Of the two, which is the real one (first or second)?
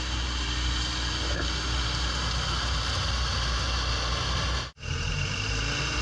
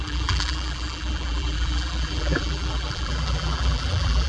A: first